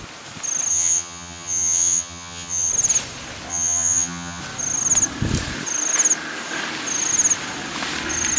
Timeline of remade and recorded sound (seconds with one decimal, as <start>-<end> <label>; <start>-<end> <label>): 0.0-0.7 recorded; 0.7-2.7 remade; 2.7-3.5 recorded; 3.5-4.4 remade; 4.4-8.4 recorded